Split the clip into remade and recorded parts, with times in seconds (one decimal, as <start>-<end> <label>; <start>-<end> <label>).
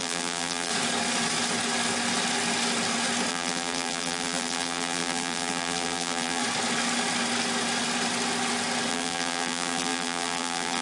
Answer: 0.0-0.7 remade; 0.7-3.3 recorded; 3.3-6.4 remade; 6.4-8.9 recorded; 8.9-10.8 remade